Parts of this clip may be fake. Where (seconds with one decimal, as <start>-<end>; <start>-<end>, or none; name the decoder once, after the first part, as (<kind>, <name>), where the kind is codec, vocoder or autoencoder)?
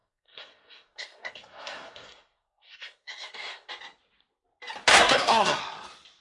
0.0-3.7 (codec, SNAC); 4.9-5.6